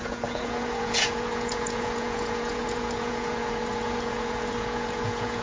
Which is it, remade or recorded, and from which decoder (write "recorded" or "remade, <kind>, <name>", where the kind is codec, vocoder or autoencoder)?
remade, vocoder, Vocos